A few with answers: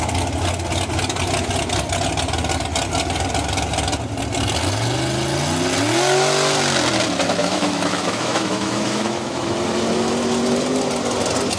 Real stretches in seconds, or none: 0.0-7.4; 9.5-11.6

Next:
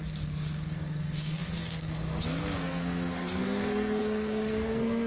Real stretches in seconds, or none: none

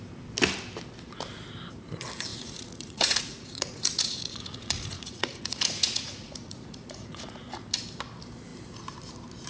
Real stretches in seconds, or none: 0.0-2.3; 7.5-9.5

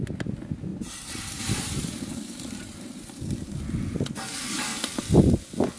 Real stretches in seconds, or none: 0.0-0.7; 3.2-5.8

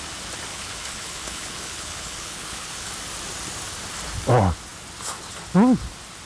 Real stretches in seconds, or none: 0.0-0.5; 2.9-6.3

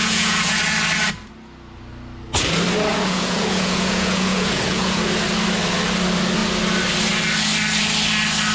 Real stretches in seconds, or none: 0.6-2.9; 5.0-8.5

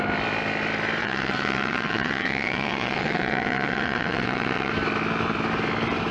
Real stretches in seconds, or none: 0.0-1.0; 4.7-6.1

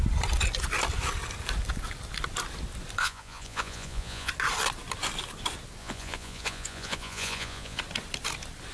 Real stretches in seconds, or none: 0.0-3.0; 4.3-5.8; 7.8-8.7